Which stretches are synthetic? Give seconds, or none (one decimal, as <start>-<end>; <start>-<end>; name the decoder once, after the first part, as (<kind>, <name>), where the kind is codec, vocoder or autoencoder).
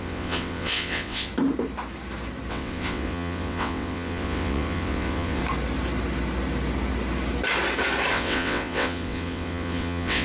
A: 0.0-1.3 (vocoder, WaveNeXt); 2.5-5.4; 8.1-10.2